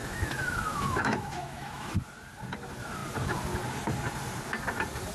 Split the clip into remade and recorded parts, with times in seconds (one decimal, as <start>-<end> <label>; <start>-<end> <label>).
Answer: 0.0-1.9 remade; 1.9-5.1 recorded